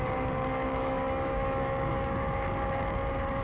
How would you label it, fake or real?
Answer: fake